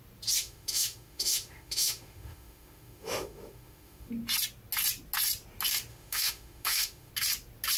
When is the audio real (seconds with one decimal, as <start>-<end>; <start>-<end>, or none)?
0.0-0.4; 4.1-5.9; 7.1-7.8